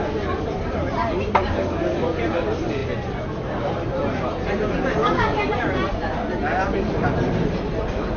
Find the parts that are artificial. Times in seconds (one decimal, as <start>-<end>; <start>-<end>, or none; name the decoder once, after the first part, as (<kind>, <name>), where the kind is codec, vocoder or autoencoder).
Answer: 1.4-2.2 (codec, DAC); 5.0-5.5